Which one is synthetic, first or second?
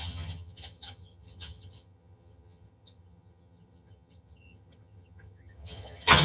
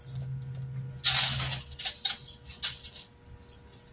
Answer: first